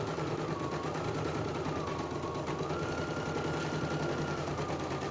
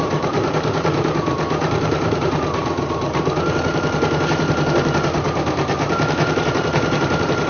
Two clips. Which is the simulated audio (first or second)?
second